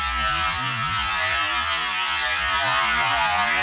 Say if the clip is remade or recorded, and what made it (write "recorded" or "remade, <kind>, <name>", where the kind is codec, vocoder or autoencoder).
recorded